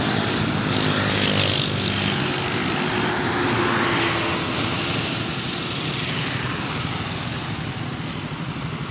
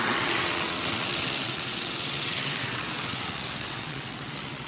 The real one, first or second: first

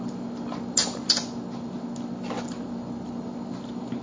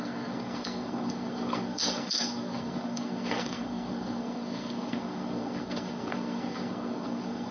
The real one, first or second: first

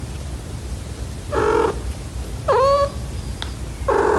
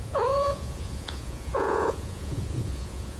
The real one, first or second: first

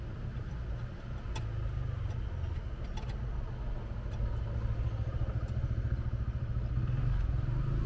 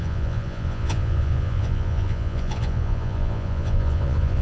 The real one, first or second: first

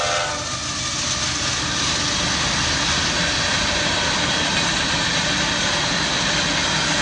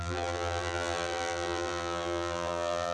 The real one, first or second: first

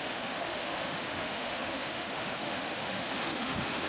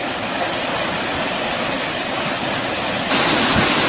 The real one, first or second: second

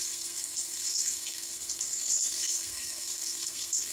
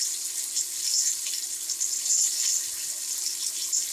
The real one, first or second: second